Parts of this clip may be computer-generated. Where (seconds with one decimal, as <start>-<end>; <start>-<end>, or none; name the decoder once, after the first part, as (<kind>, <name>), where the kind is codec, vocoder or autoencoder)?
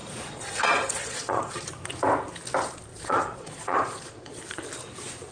0.0-1.6 (vocoder, Vocos); 2.9-4.4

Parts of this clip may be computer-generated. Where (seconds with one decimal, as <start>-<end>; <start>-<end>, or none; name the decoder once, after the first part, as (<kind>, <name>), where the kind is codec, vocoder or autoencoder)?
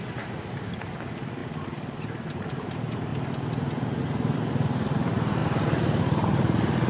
0.0-3.1 (vocoder, BigVGAN v2); 4.0-6.9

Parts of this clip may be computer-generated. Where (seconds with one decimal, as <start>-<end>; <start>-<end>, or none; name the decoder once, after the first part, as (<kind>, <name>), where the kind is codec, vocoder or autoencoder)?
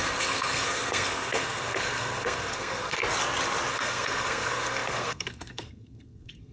0.0-3.0 (codec, SNAC); 3.7-6.5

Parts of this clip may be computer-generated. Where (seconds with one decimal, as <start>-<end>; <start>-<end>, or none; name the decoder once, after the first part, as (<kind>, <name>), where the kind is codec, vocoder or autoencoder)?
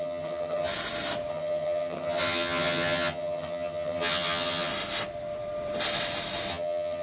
0.0-0.7 (vocoder, HiFi-GAN); 1.3-4.7; 6.5-7.0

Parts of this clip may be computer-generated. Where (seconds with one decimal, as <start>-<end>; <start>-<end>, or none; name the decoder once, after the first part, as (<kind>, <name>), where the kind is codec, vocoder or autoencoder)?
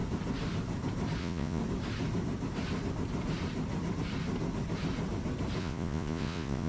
1.2-1.6 (vocoder, Vocos); 5.6-6.7